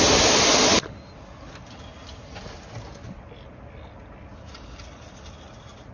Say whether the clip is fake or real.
real